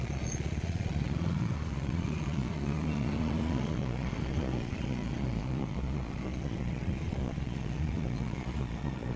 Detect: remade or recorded remade